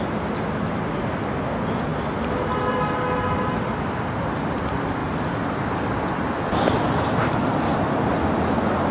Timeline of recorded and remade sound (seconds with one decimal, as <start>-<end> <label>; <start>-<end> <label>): 0.0-8.9 recorded